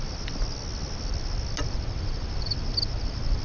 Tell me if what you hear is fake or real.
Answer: real